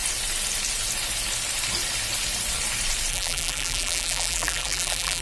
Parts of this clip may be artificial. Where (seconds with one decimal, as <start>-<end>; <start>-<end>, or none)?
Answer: 3.1-5.2